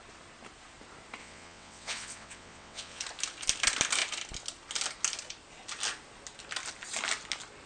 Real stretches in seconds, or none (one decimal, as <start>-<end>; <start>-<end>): 0.0-1.2; 3.0-7.7